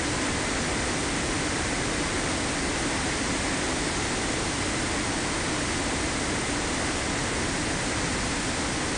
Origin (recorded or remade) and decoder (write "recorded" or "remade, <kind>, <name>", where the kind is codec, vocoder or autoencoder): recorded